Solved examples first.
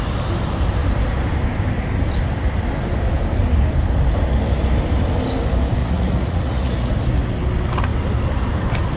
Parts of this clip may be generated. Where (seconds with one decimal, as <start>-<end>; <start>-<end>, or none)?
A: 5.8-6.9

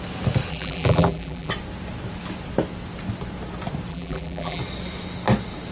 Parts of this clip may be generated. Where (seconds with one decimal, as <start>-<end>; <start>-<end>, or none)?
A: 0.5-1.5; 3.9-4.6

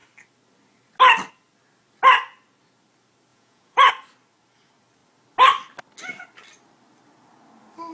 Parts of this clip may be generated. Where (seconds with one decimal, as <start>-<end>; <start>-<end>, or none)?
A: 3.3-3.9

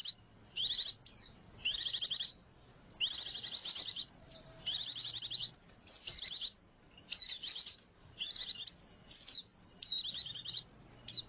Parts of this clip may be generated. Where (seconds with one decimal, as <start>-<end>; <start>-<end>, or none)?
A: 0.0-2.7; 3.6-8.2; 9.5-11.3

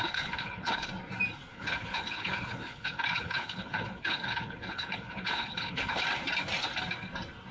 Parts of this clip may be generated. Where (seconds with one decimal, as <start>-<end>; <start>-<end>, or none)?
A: 0.0-0.9; 1.5-6.0